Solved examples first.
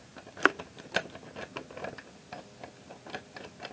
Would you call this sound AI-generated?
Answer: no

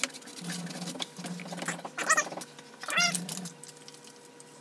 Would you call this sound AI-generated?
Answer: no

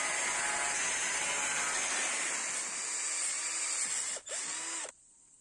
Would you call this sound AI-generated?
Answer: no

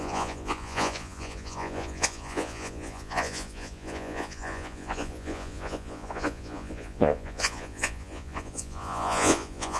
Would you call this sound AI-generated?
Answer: yes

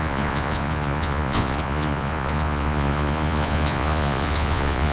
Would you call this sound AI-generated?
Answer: yes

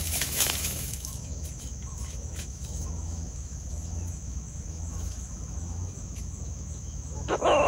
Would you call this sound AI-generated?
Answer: yes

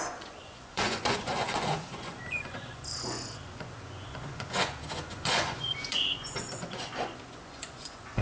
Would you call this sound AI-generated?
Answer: yes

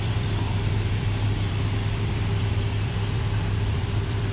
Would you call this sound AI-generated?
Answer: yes